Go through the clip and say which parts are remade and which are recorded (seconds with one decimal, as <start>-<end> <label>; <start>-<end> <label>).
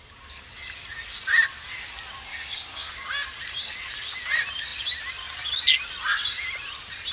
0.0-2.3 recorded; 2.3-2.9 remade; 2.9-7.1 recorded